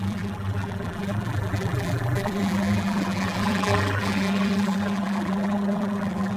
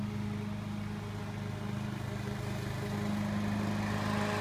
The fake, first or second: first